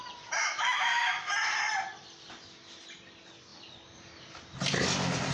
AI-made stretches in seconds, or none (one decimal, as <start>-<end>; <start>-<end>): 0.4-1.3